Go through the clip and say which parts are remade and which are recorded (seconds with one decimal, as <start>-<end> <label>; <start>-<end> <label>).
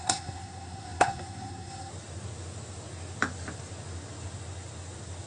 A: 0.0-1.9 remade; 1.9-5.3 recorded